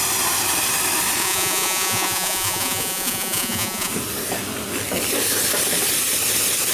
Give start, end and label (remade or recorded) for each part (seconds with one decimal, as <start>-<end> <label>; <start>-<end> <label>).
0.0-1.2 recorded; 1.2-3.9 remade; 3.9-6.7 recorded